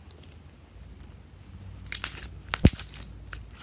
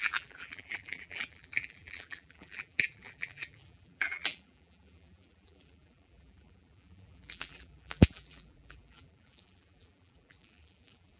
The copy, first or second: second